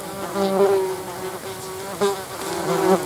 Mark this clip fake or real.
real